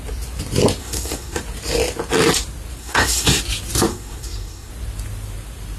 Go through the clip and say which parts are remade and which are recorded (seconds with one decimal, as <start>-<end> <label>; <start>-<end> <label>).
0.0-0.8 recorded; 0.8-1.4 remade; 1.4-2.8 recorded; 2.8-3.4 remade; 3.4-3.9 recorded; 3.9-4.7 remade; 4.7-5.8 recorded